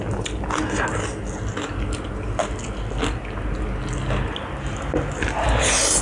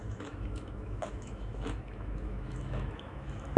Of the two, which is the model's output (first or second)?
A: second